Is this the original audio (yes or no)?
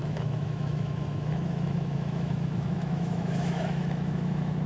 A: no